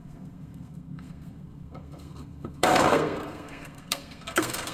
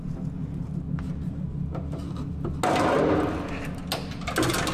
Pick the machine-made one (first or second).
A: first